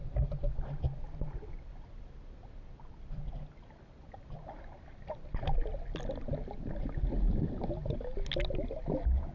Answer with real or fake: real